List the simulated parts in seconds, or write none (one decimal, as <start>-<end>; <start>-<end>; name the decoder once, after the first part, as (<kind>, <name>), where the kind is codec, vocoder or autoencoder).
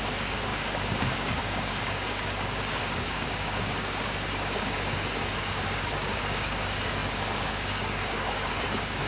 0.0-9.1 (codec, DAC)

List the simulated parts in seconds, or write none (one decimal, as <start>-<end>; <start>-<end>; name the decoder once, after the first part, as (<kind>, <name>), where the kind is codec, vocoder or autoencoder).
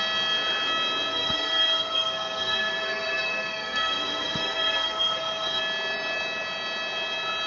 1.1-5.6 (codec, SNAC)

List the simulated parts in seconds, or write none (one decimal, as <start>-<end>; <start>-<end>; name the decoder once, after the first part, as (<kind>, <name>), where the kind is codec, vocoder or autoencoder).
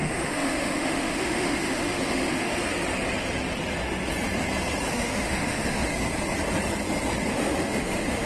0.0-2.6 (autoencoder, DAC-VAE); 4.9-5.9; 7.3-8.3